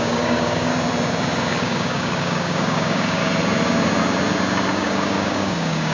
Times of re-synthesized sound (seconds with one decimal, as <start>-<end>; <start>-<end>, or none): 0.0-0.7; 1.6-3.2; 4.7-5.9